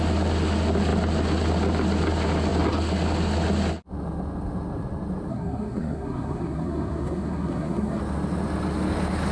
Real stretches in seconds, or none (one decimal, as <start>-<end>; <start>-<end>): 0.0-5.3; 8.0-9.3